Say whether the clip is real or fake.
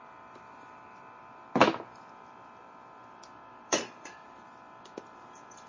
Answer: fake